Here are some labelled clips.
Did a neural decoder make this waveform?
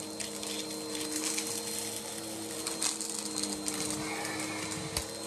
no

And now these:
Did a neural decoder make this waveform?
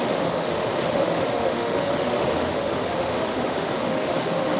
yes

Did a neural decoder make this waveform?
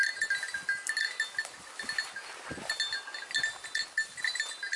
no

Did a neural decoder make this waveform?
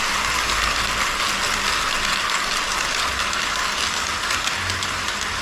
no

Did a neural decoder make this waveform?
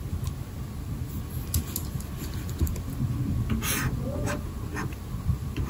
no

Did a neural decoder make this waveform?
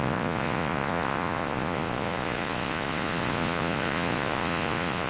yes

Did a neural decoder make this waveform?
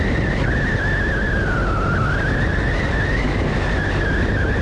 no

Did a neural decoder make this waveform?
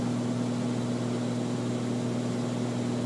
no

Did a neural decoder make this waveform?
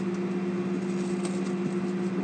no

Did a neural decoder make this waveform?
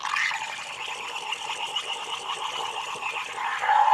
no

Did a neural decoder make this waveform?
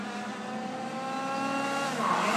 no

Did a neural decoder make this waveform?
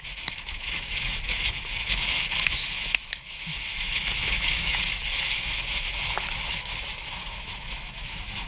yes